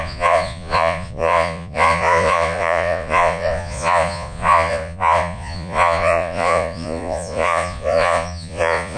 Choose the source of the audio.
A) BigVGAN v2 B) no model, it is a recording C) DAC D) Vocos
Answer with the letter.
D